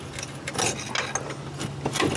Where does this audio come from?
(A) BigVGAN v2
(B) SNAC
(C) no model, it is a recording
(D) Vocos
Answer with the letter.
C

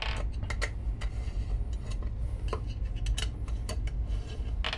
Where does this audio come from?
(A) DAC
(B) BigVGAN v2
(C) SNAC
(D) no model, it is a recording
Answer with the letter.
D